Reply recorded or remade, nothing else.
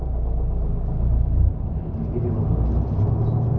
recorded